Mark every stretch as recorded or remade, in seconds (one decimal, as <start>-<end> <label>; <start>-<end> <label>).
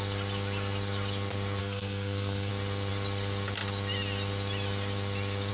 0.0-1.6 recorded; 1.6-2.5 remade; 2.5-5.5 recorded